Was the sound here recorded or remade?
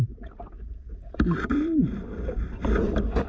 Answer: remade